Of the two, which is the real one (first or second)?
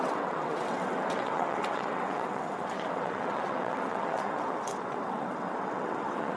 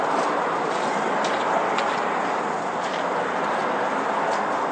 second